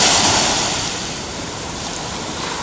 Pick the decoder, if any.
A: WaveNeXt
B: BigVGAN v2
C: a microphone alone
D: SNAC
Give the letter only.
C